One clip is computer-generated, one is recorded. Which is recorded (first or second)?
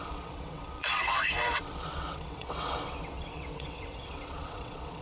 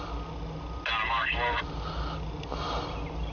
second